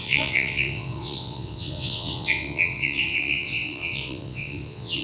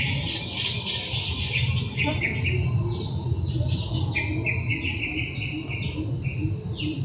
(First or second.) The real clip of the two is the second